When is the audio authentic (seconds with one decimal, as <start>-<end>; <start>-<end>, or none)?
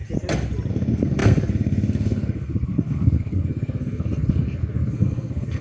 0.0-0.7